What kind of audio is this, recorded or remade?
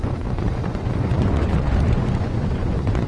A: remade